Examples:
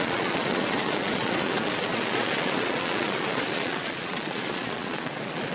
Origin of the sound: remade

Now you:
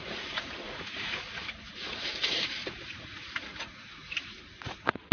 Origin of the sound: remade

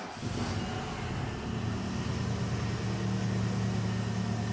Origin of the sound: recorded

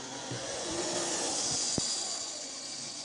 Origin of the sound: remade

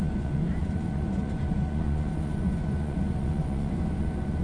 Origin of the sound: remade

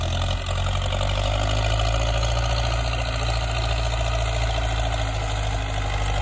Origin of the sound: recorded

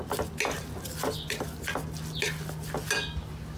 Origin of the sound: recorded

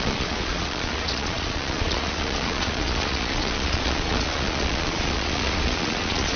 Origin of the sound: remade